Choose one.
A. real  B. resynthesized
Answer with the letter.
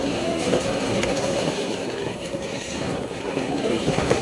B